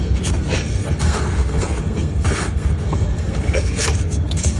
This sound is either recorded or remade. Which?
remade